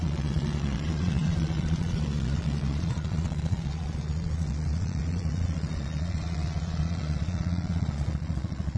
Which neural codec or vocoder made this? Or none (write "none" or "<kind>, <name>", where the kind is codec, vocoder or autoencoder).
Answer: vocoder, Vocos